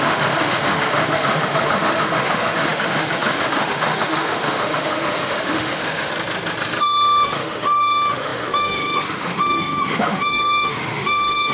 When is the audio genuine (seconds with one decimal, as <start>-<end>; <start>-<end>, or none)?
6.1-6.8